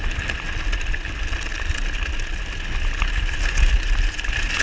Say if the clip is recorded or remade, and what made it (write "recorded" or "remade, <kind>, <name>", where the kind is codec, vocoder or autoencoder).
recorded